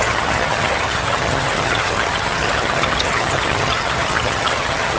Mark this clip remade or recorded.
remade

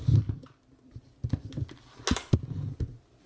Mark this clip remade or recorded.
recorded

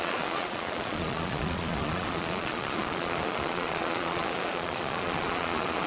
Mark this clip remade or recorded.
remade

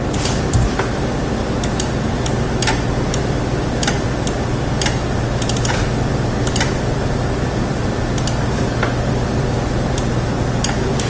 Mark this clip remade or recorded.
recorded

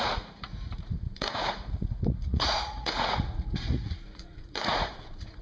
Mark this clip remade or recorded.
remade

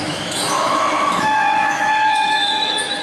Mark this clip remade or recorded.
remade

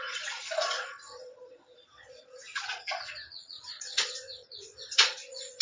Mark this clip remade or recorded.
remade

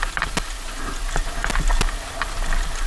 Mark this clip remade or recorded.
recorded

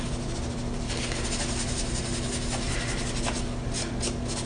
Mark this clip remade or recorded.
recorded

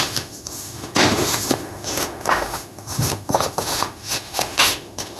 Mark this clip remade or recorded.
remade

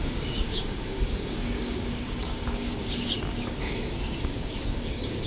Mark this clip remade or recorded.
remade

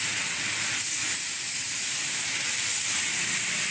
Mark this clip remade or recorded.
recorded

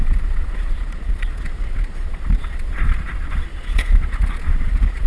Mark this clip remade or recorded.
remade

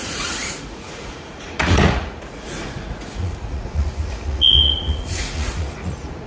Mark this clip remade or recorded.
remade